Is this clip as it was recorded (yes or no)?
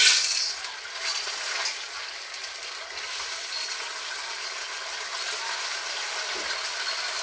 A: yes